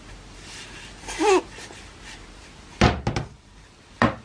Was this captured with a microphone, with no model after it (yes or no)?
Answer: yes